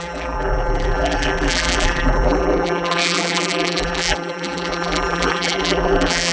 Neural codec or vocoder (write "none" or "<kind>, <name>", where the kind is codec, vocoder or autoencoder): vocoder, BigVGAN v2